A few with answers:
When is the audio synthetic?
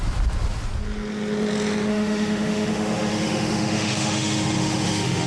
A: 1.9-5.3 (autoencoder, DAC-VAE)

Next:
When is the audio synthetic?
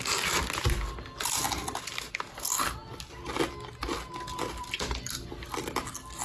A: none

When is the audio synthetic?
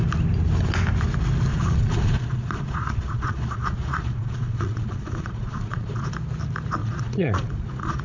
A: 1.5-6.1 (vocoder, Vocos); 6.8-8.0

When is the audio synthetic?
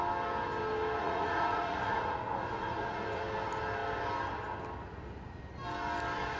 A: 1.0-3.2 (vocoder, Vocos)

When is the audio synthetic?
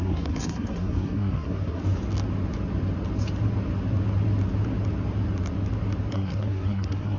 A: 0.0-1.8 (codec, SNAC); 6.1-7.2